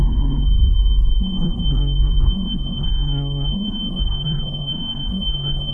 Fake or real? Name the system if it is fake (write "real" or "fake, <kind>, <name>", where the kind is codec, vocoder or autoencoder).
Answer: fake, codec, SNAC